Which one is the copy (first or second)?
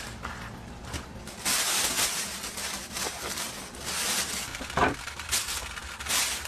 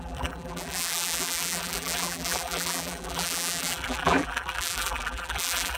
second